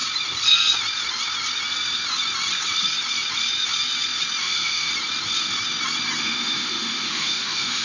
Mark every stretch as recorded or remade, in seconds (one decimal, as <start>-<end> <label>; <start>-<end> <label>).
0.0-4.4 recorded; 4.4-4.9 remade; 4.9-6.2 recorded; 6.2-7.8 remade